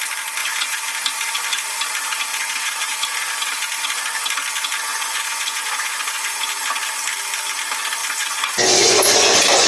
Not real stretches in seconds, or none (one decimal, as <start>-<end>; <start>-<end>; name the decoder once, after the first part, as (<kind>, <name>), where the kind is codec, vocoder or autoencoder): 0.4-0.9 (vocoder, Vocos); 2.3-3.0; 4.9-6.4; 8.0-9.7